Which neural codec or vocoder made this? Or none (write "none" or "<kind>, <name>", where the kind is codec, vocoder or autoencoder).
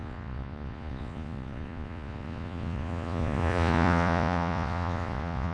vocoder, Vocos